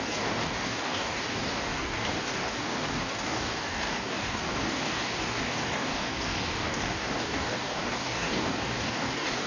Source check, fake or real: fake